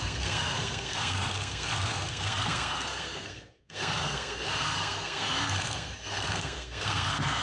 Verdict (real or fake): fake